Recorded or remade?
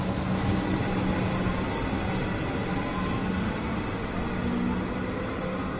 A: recorded